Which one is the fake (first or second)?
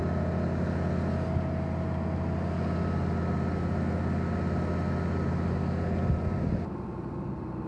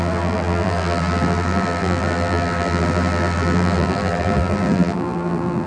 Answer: second